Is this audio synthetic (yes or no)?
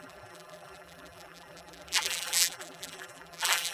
yes